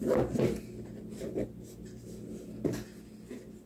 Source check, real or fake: real